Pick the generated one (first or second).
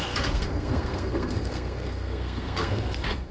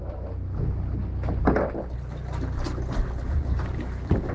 first